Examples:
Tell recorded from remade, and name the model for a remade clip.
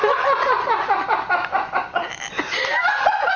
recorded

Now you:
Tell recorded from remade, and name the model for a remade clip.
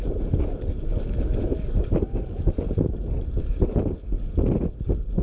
recorded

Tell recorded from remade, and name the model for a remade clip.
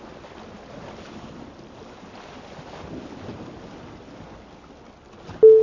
recorded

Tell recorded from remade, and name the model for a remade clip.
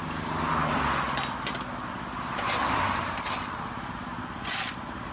recorded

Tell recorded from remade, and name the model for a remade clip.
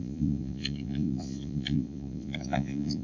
remade, vocoder, Vocos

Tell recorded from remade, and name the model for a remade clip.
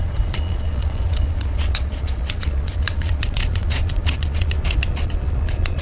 remade, vocoder, Vocos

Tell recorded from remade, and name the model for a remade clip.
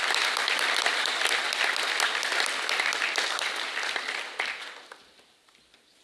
recorded